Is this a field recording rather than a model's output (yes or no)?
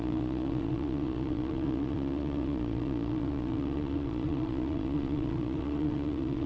no